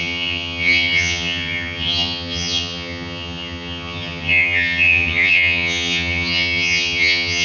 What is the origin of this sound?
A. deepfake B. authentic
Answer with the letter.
A